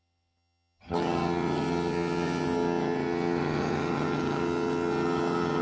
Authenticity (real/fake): fake